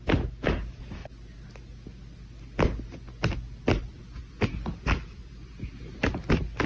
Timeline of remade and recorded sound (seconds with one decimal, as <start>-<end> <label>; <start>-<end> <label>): 0.0-4.2 recorded; 4.2-5.8 remade; 5.8-6.7 recorded